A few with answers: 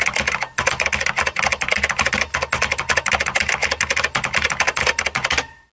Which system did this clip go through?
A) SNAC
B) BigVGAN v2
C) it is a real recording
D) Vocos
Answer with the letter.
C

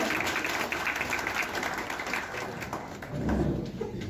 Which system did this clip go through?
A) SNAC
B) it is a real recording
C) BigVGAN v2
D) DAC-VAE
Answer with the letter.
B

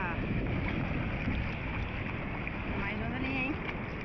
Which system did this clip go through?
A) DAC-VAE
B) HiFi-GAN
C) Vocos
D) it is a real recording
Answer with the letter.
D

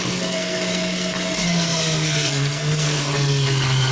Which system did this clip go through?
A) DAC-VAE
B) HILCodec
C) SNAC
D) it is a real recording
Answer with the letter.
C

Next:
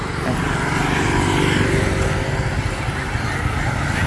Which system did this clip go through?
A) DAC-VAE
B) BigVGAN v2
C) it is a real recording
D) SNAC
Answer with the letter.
C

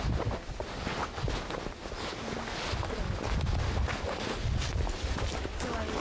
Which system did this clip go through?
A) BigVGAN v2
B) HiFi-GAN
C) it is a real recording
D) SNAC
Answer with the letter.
C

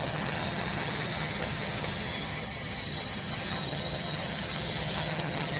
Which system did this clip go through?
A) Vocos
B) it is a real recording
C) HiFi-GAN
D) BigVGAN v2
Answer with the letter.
C